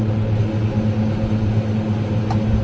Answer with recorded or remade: recorded